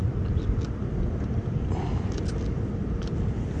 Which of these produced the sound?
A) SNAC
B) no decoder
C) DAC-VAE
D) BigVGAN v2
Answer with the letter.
B